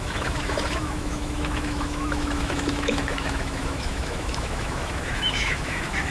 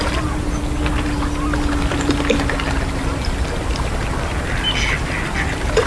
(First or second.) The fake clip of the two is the first